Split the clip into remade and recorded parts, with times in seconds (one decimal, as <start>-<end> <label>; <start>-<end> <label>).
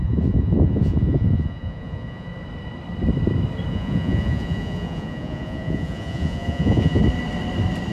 0.0-2.3 remade; 2.3-3.7 recorded; 3.7-7.0 remade; 7.0-7.9 recorded